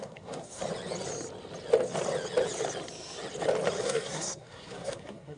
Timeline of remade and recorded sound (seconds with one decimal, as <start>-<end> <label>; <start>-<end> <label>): 0.0-0.6 remade; 0.6-3.8 recorded; 3.8-5.4 remade